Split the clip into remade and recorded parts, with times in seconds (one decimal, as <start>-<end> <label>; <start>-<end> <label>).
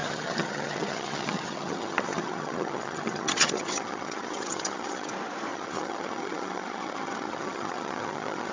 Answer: 0.0-5.1 remade; 5.1-5.5 recorded; 5.5-8.5 remade